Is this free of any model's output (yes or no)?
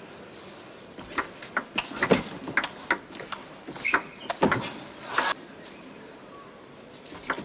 yes